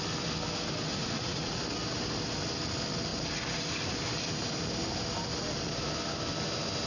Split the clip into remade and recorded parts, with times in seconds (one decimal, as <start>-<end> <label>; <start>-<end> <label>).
0.0-0.9 recorded; 0.9-1.5 remade; 1.5-6.9 recorded